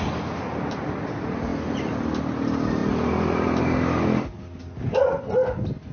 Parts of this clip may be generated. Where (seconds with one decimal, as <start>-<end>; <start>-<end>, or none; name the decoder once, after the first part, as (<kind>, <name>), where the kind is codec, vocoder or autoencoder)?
none